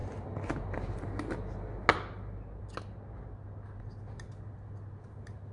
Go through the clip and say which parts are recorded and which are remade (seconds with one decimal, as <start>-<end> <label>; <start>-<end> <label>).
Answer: 0.0-5.5 recorded